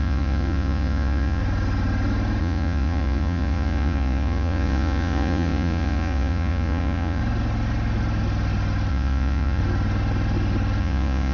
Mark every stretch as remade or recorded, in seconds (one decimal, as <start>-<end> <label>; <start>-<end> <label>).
0.0-1.4 remade; 1.4-2.4 recorded; 2.4-7.2 remade; 7.2-8.9 recorded; 8.9-9.6 remade; 9.6-10.8 recorded; 10.8-11.3 remade